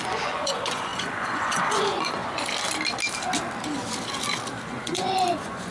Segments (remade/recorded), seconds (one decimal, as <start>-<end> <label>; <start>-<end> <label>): 0.0-2.2 remade; 2.2-4.7 recorded; 4.7-5.7 remade